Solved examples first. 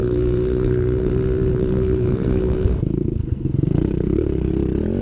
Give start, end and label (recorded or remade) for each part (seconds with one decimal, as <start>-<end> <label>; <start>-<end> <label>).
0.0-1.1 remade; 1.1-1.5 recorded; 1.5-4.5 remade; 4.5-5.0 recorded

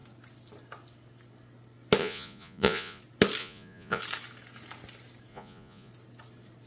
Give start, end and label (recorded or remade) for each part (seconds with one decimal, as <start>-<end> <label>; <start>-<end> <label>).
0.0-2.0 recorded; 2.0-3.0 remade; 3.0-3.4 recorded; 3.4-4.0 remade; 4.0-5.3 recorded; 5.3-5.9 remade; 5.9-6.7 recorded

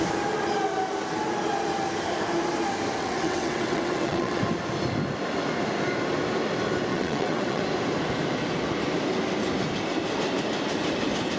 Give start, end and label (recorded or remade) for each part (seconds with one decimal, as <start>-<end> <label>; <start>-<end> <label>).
0.0-3.0 recorded; 3.0-4.4 remade; 4.4-6.9 recorded; 6.9-7.6 remade; 7.6-11.4 recorded